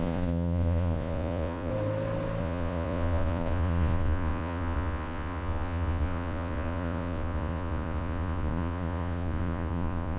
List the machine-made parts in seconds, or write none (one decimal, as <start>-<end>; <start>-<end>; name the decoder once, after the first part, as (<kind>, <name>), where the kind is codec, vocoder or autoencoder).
0.0-1.7 (vocoder, Vocos); 2.4-10.2